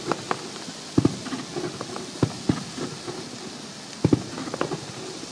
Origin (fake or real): real